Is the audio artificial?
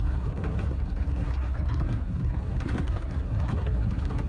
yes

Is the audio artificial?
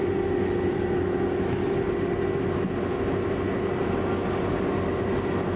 no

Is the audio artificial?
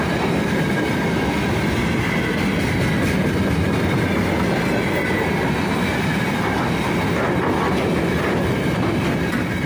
no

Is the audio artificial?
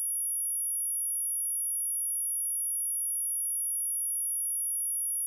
no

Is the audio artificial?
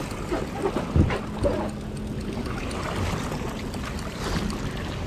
no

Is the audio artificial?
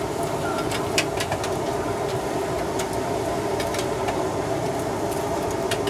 yes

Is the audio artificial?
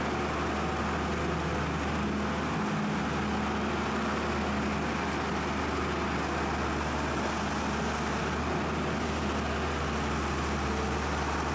no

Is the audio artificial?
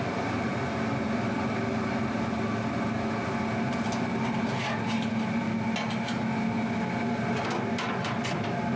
no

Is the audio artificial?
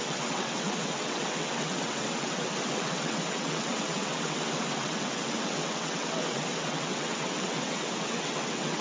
yes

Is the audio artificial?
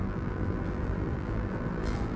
yes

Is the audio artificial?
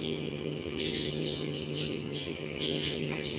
yes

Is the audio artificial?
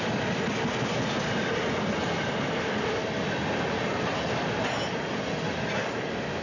no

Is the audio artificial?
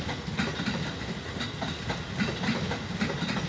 no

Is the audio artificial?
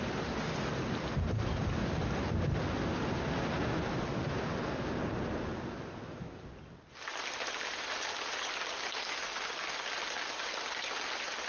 no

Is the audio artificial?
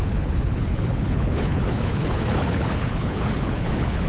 yes